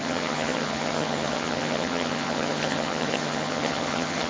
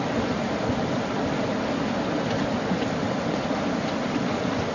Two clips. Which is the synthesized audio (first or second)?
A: first